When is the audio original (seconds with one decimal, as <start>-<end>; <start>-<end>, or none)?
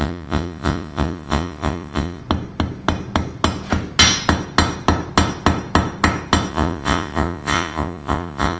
2.2-6.5